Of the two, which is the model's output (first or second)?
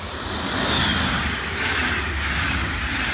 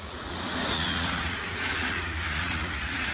second